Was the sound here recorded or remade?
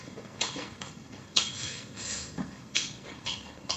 remade